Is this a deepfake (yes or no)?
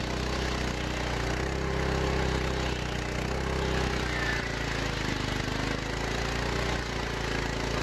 no